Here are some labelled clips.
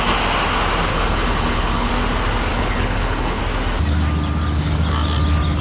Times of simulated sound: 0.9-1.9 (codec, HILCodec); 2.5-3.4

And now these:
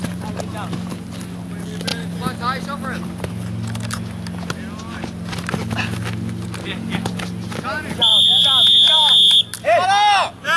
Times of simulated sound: none

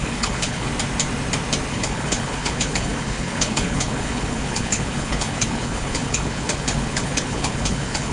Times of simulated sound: 0.0-0.7 (codec, HILCodec); 1.7-8.1